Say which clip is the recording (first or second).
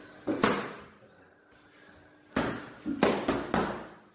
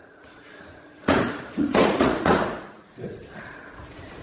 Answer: first